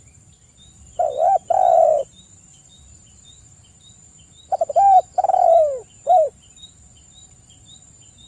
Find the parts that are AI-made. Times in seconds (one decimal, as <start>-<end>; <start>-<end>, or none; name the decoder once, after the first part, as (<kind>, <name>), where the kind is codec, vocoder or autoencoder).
0.0-8.3 (vocoder, BigVGAN v2)